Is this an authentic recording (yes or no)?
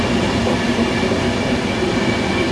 yes